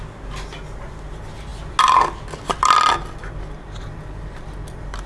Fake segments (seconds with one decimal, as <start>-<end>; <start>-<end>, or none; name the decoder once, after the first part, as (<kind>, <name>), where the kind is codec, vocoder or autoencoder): none